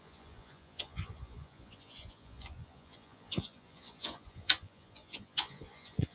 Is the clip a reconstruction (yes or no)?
yes